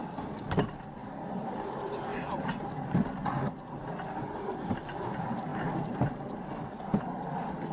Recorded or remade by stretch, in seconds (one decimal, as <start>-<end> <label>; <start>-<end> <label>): 0.0-5.5 recorded; 5.5-6.1 remade; 6.1-7.7 recorded